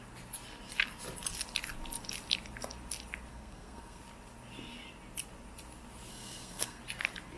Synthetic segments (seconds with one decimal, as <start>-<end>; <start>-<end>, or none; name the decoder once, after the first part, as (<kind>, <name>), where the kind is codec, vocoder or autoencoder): 3.3-4.0 (codec, SNAC); 6.1-6.8